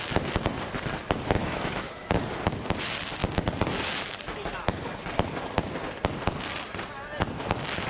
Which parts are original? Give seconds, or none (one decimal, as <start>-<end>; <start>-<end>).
0.0-1.4; 2.1-7.9